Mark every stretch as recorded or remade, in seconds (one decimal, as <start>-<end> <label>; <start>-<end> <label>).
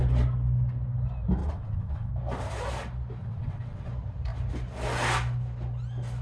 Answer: 0.0-1.4 recorded; 1.4-2.1 remade; 2.1-3.2 recorded; 3.2-3.9 remade; 3.9-6.2 recorded